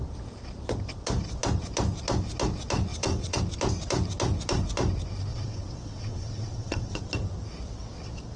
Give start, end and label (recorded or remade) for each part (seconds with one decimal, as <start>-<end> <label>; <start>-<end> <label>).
0.0-2.9 recorded; 2.9-3.4 remade; 3.4-5.3 recorded; 5.3-7.0 remade; 7.0-8.4 recorded